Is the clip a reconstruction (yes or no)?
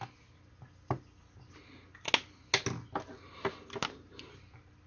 no